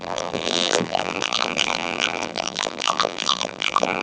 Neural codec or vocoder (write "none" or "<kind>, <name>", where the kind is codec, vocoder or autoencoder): vocoder, BigVGAN v2